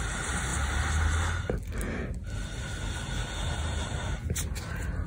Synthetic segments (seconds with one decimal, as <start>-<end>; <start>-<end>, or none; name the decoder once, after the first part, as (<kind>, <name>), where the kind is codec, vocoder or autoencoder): 0.0-0.5 (vocoder, BigVGAN v2); 3.6-4.2